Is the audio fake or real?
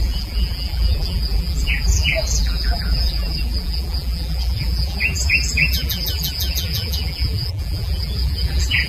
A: fake